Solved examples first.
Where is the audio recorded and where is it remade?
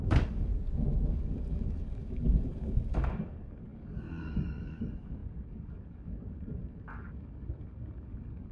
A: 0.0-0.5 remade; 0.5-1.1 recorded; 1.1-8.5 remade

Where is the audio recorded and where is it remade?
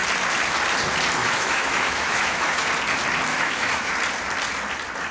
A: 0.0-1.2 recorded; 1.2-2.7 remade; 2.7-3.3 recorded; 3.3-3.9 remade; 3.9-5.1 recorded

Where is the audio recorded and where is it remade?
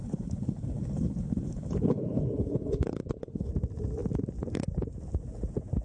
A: 0.0-3.5 remade; 3.5-5.8 recorded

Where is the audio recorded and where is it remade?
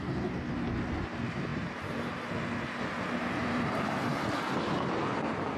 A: 0.0-1.5 recorded; 1.5-2.1 remade; 2.1-3.4 recorded; 3.4-4.1 remade; 4.1-5.6 recorded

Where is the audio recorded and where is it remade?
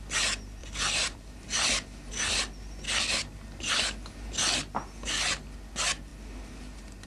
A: 0.0-0.6 recorded; 0.6-2.1 remade; 2.1-7.1 recorded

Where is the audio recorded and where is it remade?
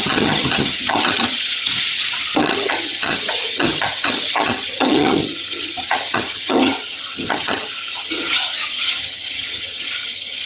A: 0.0-1.7 remade; 1.7-2.4 recorded; 2.4-10.5 remade